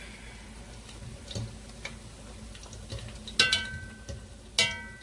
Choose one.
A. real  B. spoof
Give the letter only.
A